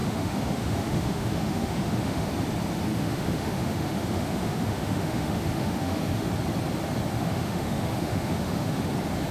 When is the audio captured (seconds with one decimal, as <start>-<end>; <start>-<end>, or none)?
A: 2.3-2.9; 6.3-7.2; 8.9-9.3